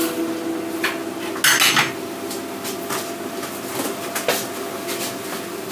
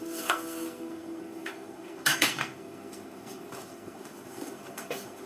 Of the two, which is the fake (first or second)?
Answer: second